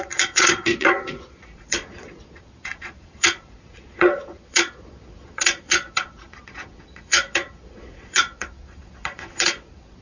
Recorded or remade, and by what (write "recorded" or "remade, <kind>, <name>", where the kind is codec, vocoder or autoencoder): remade, vocoder, Vocos